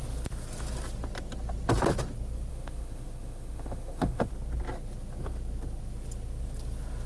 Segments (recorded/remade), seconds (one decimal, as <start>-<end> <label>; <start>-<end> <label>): 0.0-2.5 recorded; 2.5-4.3 remade; 4.3-7.1 recorded